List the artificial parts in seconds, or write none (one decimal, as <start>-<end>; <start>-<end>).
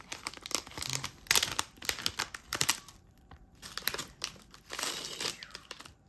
2.5-3.4